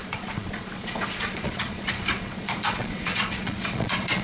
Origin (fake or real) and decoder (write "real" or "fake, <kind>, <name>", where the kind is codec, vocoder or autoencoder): fake, vocoder, Vocos